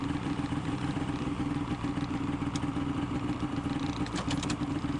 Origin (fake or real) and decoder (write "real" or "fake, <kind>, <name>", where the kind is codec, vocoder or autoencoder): fake, vocoder, BigVGAN v2